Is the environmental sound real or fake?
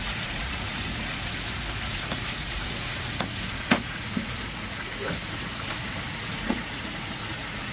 fake